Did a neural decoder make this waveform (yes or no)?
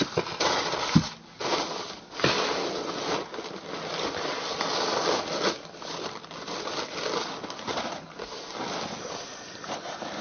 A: no